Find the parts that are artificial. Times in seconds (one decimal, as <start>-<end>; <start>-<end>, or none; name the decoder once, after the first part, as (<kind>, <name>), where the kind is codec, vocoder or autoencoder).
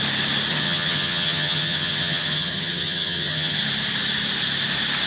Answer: 0.5-3.6 (vocoder, HiFi-GAN)